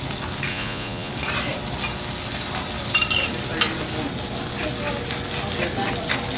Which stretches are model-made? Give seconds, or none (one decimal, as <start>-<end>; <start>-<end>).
0.5-1.1